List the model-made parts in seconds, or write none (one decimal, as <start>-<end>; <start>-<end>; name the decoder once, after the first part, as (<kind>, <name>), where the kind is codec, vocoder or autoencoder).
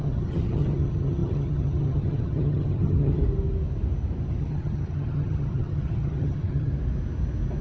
0.0-3.2 (vocoder, HiFi-GAN); 4.3-6.7